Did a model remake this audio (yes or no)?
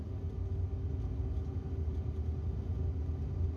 no